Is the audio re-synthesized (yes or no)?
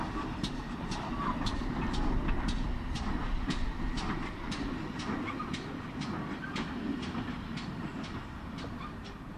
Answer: no